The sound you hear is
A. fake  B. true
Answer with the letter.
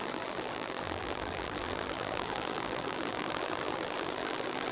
A